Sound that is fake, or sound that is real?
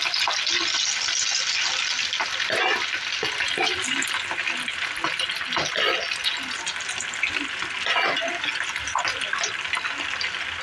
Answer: real